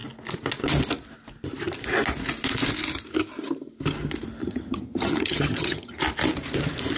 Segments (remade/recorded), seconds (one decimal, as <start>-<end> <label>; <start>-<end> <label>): 0.0-4.4 recorded; 4.4-6.0 remade; 6.0-7.0 recorded